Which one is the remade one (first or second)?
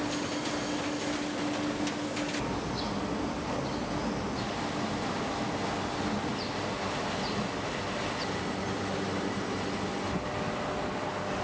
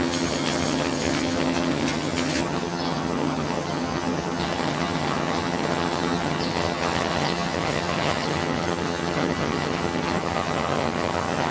second